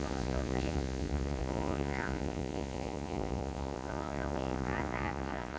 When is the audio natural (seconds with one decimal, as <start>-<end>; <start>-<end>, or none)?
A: none